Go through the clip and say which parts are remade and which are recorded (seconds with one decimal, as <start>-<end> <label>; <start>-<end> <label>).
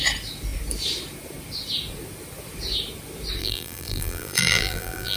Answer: 0.0-3.4 recorded; 3.4-5.2 remade